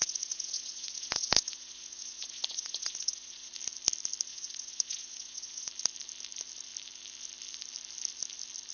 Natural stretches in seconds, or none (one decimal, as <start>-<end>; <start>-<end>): 3.5-4.3; 5.7-8.7